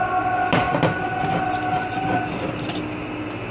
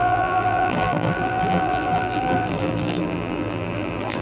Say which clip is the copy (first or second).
second